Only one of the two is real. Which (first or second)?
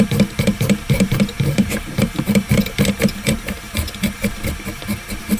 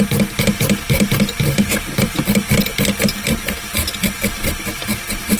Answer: second